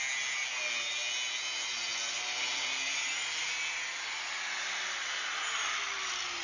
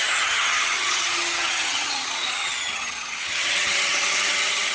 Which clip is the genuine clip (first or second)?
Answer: first